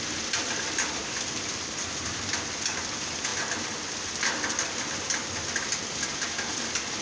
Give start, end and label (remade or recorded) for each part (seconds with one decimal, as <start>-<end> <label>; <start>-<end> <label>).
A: 0.0-7.0 recorded